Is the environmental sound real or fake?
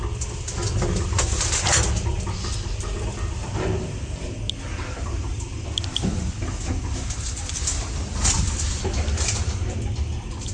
real